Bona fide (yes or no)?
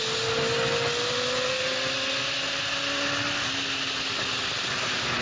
yes